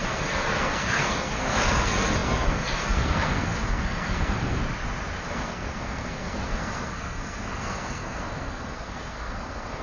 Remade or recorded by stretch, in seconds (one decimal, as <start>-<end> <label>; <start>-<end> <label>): 0.0-4.6 remade; 4.6-5.2 recorded; 5.2-9.8 remade